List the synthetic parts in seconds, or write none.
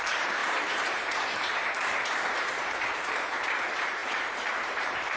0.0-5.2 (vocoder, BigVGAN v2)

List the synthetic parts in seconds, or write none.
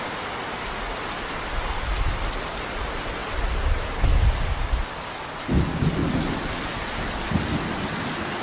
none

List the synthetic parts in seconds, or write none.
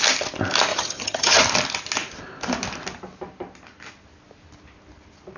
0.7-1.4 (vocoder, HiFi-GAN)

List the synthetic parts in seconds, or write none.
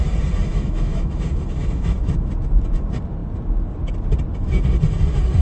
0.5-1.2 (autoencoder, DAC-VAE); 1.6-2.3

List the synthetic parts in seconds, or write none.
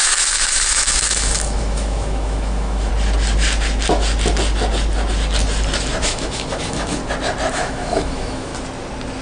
0.0-2.9 (autoencoder, DAC-VAE); 6.0-7.0; 7.5-8.5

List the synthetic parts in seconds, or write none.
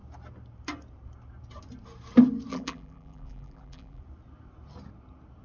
2.5-4.0 (vocoder, BigVGAN v2)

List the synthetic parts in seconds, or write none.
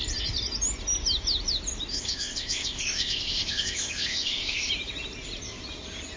1.9-4.7 (codec, ZipCodec)